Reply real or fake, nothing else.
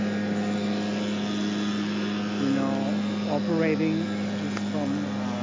real